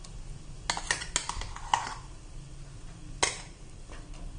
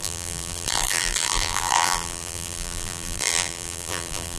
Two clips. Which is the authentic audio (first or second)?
first